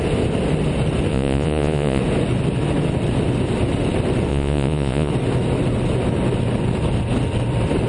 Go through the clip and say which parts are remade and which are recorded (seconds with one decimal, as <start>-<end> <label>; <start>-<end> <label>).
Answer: 0.0-1.1 recorded; 1.1-2.0 remade; 2.0-4.3 recorded; 4.3-5.1 remade; 5.1-7.9 recorded